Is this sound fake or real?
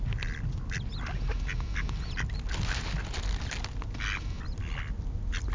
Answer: real